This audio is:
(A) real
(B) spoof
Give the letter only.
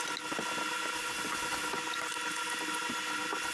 A